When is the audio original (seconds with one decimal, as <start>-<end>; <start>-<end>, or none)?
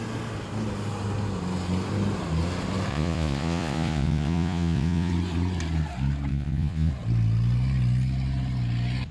0.0-2.9; 5.1-6.3; 6.9-9.1